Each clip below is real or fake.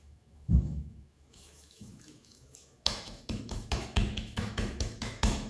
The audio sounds fake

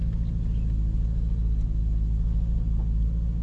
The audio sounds real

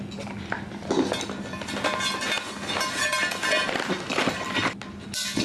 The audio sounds real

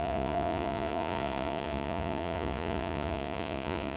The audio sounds fake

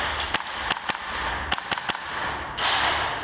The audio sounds real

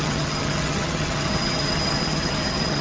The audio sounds fake